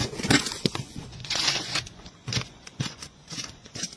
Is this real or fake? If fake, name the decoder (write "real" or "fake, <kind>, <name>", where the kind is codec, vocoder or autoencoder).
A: fake, vocoder, Vocos